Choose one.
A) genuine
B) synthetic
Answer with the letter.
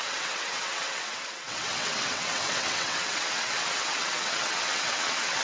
B